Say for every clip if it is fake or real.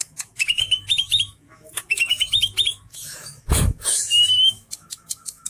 fake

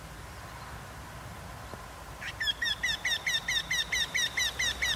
real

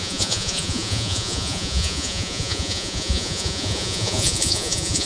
fake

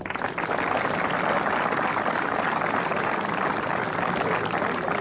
real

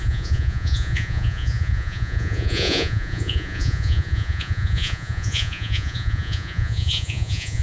fake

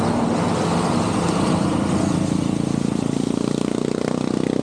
real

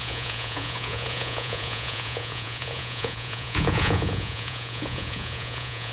fake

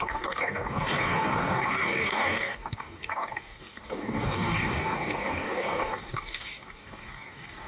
fake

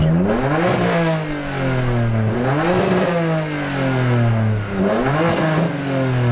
real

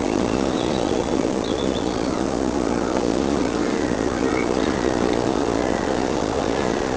fake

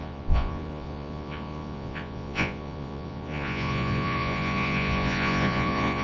fake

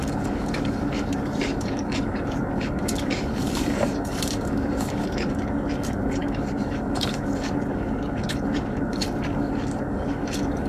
fake